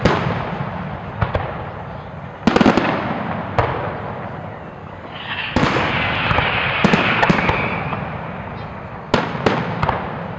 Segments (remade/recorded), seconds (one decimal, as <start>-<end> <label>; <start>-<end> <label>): 0.0-4.8 recorded; 4.8-5.9 remade; 5.9-10.4 recorded